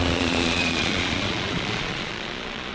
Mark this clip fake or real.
fake